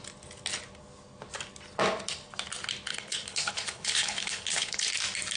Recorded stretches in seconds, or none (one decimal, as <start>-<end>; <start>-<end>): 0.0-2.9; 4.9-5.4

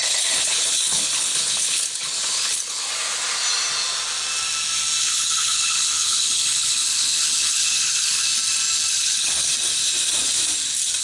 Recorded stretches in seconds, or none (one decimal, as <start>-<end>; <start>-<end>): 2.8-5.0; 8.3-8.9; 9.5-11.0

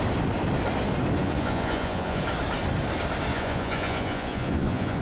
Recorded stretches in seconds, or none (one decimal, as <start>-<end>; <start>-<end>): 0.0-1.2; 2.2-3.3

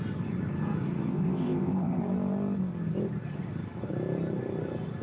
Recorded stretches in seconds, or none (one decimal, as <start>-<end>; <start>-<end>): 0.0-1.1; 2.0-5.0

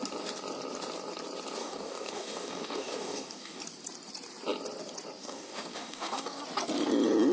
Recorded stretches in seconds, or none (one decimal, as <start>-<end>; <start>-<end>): 0.0-1.6; 3.6-5.2; 6.4-7.3

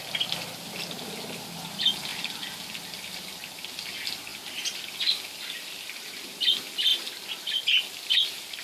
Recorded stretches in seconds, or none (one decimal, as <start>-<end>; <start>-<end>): 0.0-8.6